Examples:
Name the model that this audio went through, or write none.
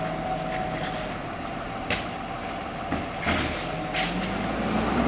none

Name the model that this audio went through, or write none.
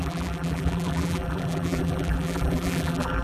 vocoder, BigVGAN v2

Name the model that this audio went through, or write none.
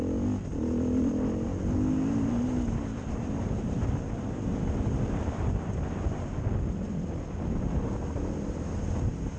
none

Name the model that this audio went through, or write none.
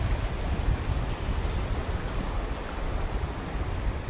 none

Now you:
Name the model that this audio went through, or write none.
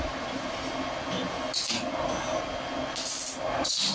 none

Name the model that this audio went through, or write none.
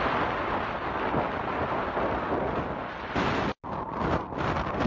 none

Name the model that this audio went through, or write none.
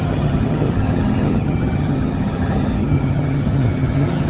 vocoder, HiFi-GAN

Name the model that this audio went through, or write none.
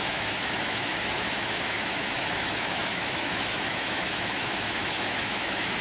autoencoder, DAC-VAE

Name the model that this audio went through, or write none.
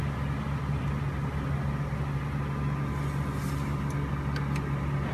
none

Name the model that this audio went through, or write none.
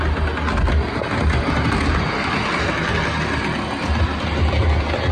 none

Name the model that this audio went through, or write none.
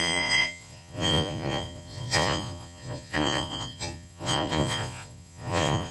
vocoder, Vocos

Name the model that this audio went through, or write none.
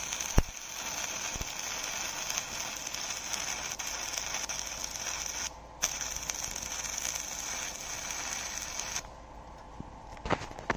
none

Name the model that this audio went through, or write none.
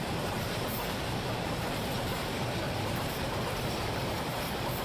vocoder, BigVGAN v2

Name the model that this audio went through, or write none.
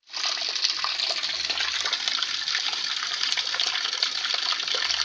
none